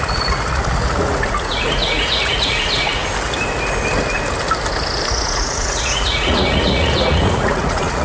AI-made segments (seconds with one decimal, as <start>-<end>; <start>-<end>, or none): 0.0-3.0; 5.1-8.0